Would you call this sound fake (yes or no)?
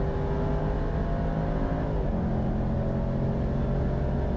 no